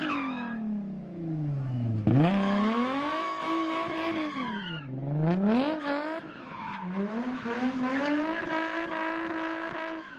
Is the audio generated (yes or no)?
yes